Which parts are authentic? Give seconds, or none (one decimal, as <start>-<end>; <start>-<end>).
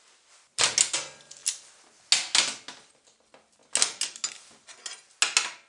0.0-5.7